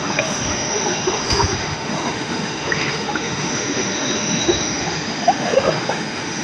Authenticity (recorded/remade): remade